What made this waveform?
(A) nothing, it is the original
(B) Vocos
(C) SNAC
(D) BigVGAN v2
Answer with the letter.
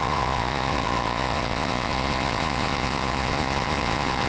B